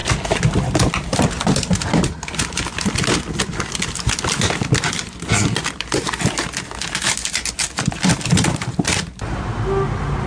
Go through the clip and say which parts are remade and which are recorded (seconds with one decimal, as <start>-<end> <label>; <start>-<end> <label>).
0.0-10.3 recorded